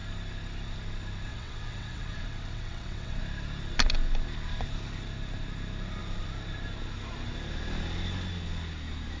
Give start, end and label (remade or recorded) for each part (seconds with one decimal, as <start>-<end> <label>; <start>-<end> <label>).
0.0-1.3 recorded; 1.3-3.2 remade; 3.2-9.2 recorded